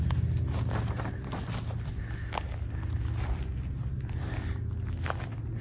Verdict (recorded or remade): recorded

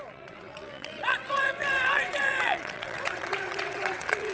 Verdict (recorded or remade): remade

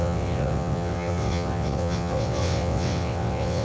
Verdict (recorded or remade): remade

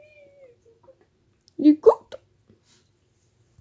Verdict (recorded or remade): recorded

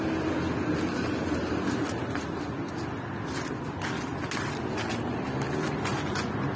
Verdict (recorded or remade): recorded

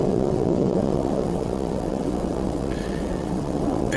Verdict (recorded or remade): remade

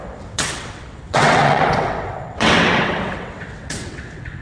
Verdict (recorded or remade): remade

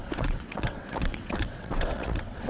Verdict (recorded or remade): remade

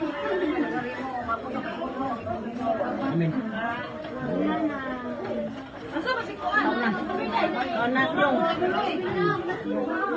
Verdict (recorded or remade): recorded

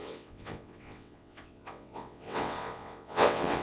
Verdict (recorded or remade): remade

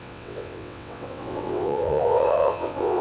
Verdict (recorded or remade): remade